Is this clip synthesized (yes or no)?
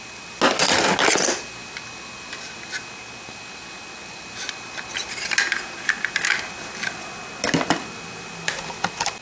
no